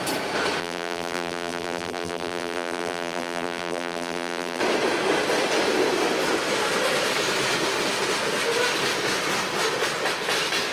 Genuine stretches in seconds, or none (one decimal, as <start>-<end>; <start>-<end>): 0.0-0.6; 4.6-10.7